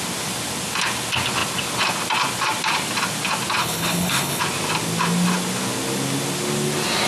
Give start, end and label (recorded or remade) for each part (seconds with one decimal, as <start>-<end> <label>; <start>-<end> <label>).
0.0-3.6 recorded; 3.6-4.4 remade; 4.4-7.1 recorded